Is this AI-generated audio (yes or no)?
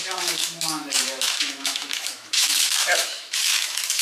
yes